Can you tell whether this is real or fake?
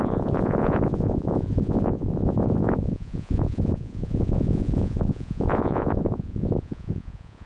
fake